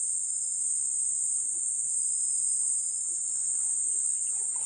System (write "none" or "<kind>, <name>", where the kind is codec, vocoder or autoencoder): none